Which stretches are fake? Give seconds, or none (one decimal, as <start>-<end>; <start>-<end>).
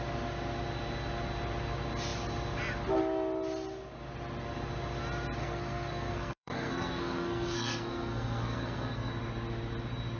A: 5.4-9.1